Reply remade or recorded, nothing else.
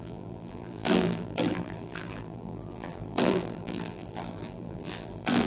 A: remade